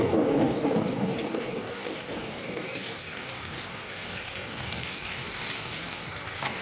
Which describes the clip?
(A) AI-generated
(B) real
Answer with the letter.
A